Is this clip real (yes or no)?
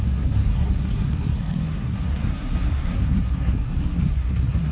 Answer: no